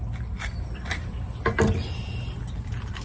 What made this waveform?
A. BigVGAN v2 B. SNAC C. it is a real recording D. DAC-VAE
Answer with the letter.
C